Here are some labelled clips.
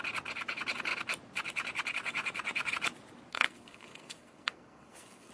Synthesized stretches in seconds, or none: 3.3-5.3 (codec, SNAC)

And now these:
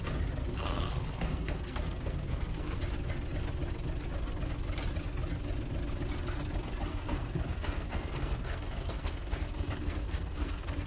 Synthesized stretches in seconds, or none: 0.4-2.8 (codec, SNAC); 6.9-10.9

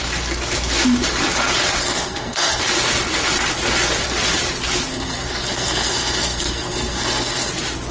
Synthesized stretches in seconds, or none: 1.8-2.6 (codec, SNAC); 4.9-7.5

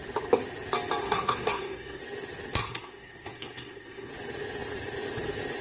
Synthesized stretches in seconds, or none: 1.0-2.0 (codec, SNAC); 2.6-4.1